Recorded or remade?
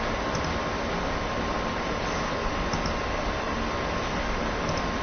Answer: recorded